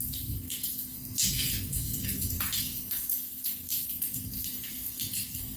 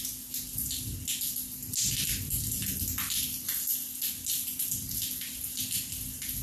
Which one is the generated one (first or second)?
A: first